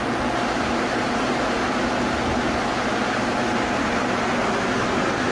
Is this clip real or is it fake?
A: real